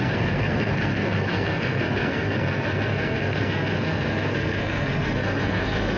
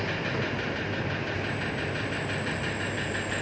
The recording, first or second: second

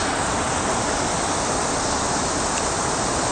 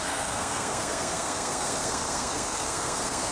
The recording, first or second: first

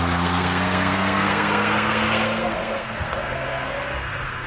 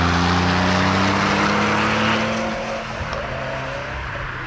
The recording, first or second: second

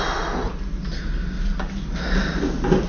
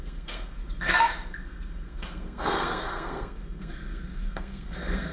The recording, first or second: first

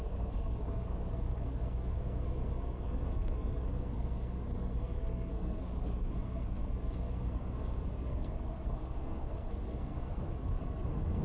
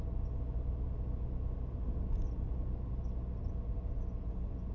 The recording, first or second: second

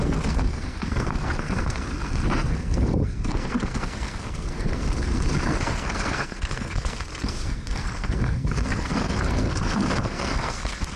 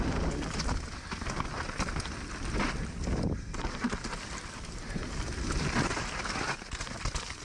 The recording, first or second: second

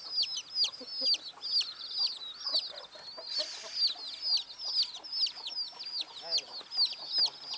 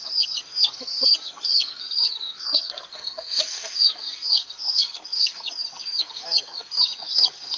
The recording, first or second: first